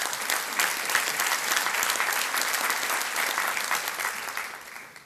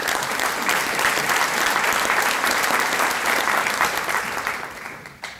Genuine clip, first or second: first